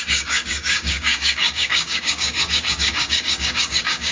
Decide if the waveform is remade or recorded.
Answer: remade